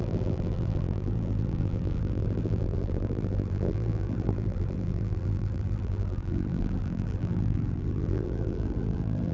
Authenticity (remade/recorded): remade